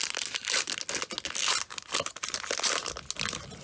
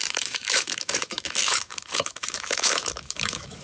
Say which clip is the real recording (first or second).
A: first